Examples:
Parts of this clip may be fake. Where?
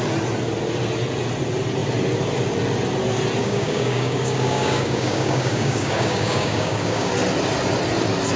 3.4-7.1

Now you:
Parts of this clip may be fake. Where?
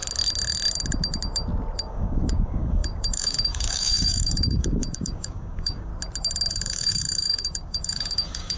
1.8-5.9; 6.5-8.6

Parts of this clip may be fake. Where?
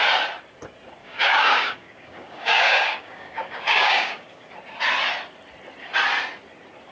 1.0-4.5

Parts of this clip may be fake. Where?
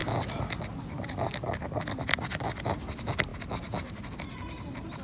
none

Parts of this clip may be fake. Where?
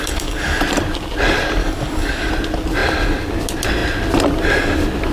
0.0-0.6; 1.6-2.3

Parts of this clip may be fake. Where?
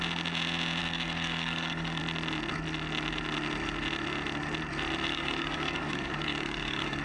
0.8-2.0; 5.1-7.0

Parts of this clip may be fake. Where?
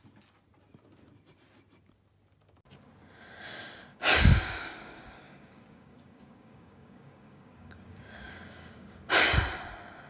3.9-9.1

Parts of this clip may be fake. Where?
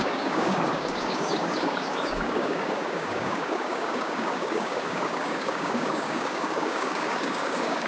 0.0-7.9